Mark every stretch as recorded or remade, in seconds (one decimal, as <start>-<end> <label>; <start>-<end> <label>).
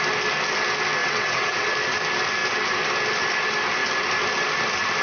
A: 0.0-1.0 recorded; 1.0-1.7 remade; 1.7-5.0 recorded